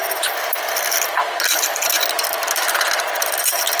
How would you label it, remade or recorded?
recorded